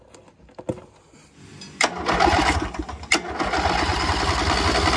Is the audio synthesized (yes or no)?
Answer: no